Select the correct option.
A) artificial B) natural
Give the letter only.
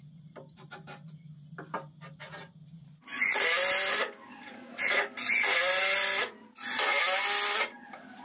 B